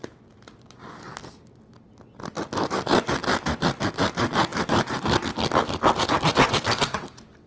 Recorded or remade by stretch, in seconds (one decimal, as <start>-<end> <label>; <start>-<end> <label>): 0.0-7.5 recorded